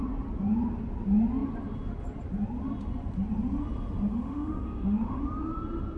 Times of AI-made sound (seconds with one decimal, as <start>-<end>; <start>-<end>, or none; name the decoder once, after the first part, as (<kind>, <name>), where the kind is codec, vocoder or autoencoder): 4.1-5.2 (autoencoder, DAC-VAE)